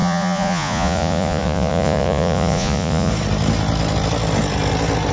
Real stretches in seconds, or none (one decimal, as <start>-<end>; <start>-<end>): 3.1-5.1